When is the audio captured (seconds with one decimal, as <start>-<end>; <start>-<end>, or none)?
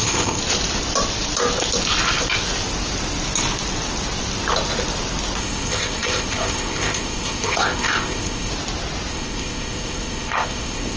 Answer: 0.4-5.4; 8.5-9.1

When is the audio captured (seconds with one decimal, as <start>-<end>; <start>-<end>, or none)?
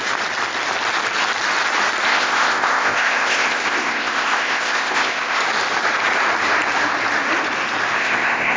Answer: 0.0-2.1; 5.4-8.0